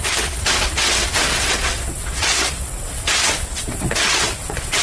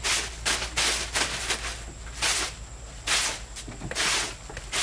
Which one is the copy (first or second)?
first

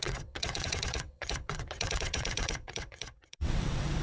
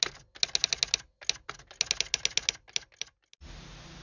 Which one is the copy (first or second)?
first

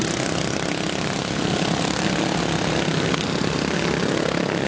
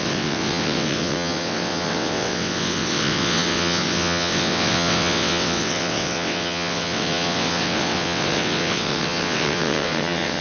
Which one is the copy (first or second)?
second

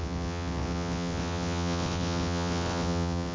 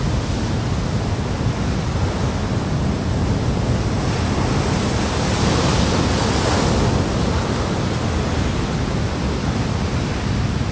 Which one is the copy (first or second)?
first